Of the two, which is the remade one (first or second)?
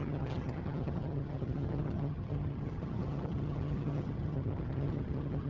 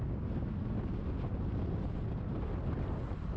first